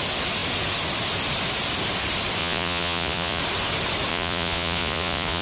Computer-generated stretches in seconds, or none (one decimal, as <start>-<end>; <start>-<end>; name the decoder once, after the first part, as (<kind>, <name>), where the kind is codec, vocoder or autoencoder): 2.4-3.4 (vocoder, Vocos); 4.1-5.4